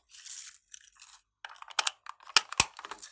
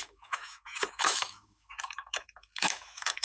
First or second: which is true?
first